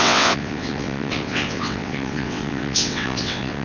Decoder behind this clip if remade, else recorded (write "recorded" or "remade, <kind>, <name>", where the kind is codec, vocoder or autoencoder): remade, vocoder, WaveNeXt